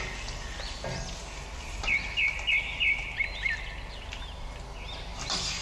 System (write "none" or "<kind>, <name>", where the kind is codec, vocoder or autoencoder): none